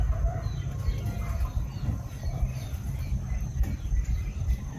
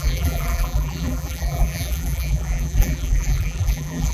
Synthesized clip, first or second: second